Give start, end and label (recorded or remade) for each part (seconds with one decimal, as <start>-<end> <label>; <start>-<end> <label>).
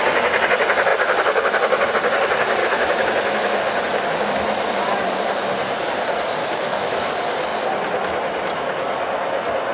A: 0.0-2.6 recorded; 2.6-3.6 remade; 3.6-6.4 recorded; 6.4-7.1 remade; 7.1-9.7 recorded